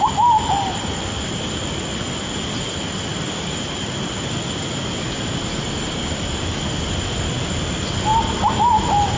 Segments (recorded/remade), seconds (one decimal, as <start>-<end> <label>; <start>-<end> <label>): 0.0-9.2 recorded